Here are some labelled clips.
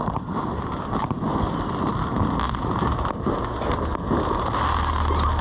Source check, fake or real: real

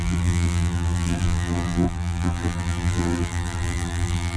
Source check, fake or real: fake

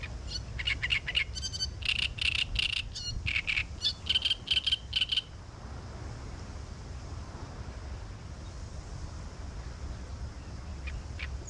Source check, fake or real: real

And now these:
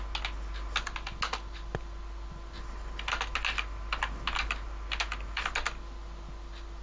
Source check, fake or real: real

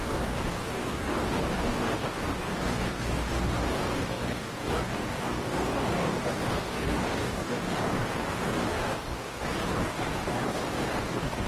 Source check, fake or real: fake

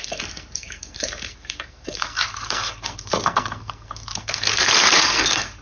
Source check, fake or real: fake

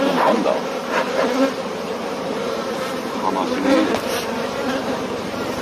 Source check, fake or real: fake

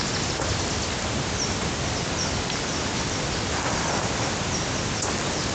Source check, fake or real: real